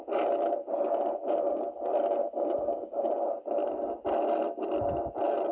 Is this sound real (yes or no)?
yes